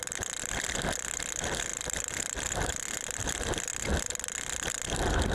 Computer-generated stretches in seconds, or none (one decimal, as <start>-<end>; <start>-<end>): none